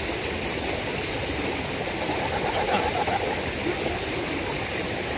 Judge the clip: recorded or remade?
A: recorded